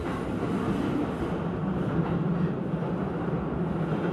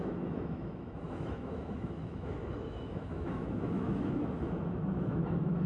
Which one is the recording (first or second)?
first